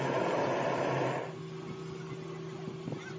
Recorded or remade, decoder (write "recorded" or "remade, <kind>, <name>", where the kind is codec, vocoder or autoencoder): recorded